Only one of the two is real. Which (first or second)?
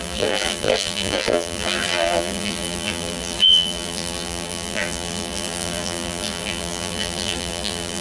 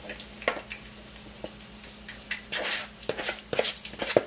second